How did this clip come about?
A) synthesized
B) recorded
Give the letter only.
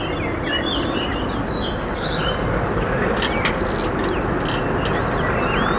B